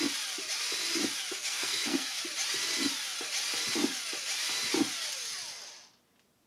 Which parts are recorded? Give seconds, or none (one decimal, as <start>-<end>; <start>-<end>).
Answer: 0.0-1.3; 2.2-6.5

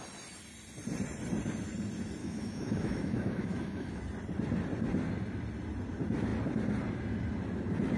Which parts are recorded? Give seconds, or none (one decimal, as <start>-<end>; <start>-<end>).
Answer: 0.0-2.2; 4.0-8.0

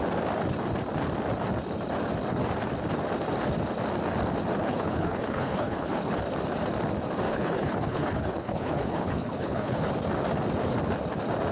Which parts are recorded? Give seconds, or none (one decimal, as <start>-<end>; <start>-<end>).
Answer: 0.0-4.6; 6.1-7.3; 9.9-11.5

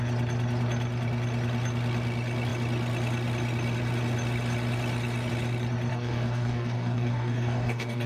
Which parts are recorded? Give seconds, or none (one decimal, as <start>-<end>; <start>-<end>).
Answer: 0.0-5.9